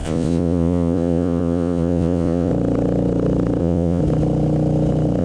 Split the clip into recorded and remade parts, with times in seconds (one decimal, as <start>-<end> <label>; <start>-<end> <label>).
0.0-2.5 remade; 2.5-3.6 recorded; 3.6-4.0 remade; 4.0-5.2 recorded